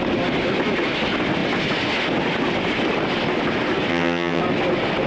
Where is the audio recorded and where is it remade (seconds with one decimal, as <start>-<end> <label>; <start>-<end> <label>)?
0.0-3.9 recorded; 3.9-4.4 remade; 4.4-5.1 recorded